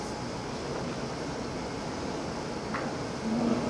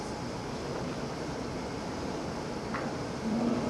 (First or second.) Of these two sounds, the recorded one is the first